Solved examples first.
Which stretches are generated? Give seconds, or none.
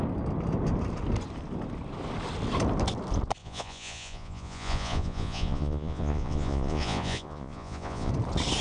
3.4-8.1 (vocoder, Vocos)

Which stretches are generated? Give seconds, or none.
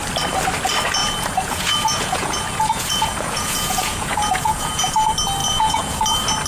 1.0-4.9 (vocoder, Vocos); 5.4-6.0